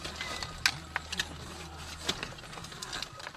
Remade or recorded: recorded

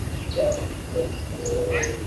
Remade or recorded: remade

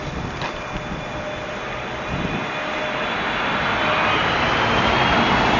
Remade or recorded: recorded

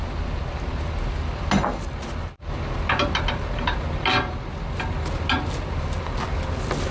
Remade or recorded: recorded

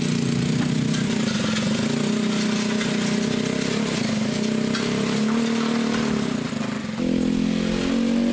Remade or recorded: recorded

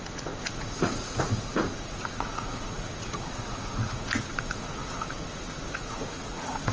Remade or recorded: remade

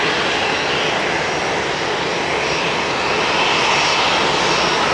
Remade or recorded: recorded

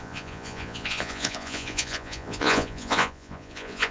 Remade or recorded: remade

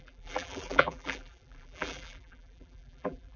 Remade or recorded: remade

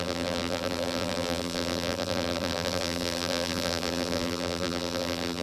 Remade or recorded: remade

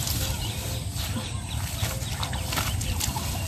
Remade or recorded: recorded